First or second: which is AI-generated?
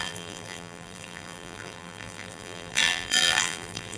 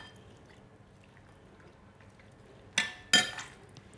first